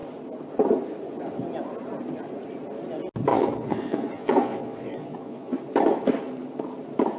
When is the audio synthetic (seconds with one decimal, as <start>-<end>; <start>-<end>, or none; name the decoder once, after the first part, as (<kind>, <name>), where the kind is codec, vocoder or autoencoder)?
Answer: 3.3-5.6 (vocoder, Vocos)